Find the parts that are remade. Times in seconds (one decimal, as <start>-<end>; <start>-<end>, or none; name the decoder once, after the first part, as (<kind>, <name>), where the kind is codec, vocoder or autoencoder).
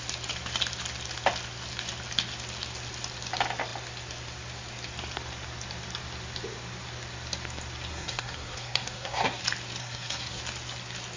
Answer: 7.9-9.4 (codec, SNAC); 9.8-10.4